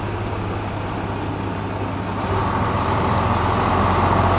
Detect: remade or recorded recorded